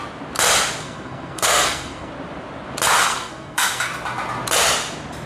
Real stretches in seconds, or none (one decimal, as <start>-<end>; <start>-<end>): 0.0-0.8; 2.1-3.0; 3.9-5.3